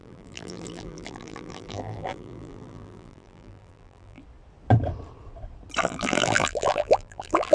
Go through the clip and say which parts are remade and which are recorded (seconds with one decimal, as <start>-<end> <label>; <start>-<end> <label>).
0.0-4.2 remade; 4.2-5.8 recorded; 5.8-7.5 remade